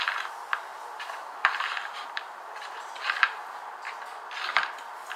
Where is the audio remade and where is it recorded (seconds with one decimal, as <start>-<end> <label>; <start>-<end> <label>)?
0.0-0.7 recorded; 0.7-3.8 remade; 3.8-5.2 recorded